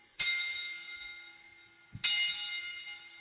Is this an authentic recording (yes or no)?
yes